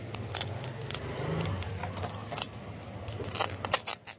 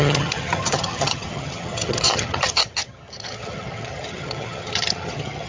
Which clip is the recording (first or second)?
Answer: first